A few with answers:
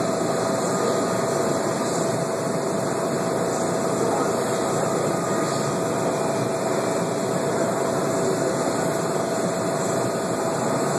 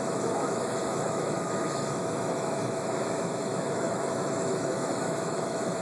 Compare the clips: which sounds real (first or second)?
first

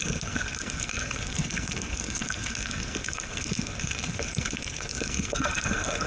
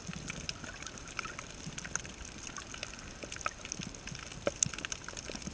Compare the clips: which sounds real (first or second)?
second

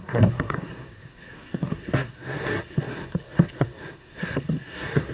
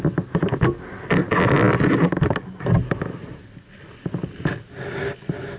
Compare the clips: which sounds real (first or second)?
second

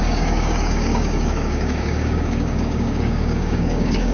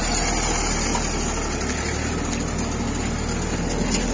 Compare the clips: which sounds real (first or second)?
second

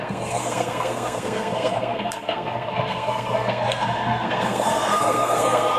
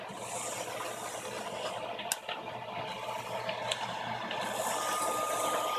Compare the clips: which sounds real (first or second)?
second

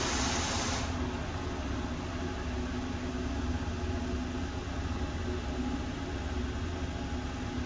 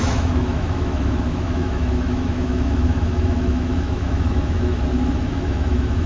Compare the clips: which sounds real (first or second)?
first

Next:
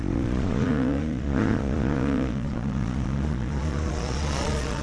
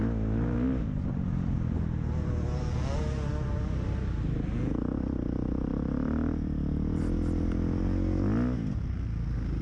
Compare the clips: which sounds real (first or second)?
second